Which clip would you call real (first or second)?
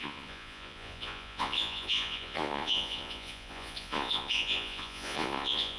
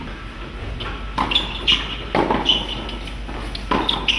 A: second